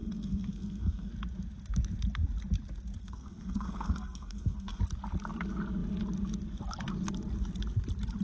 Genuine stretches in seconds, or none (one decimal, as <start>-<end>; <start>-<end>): 1.1-3.0; 4.8-8.2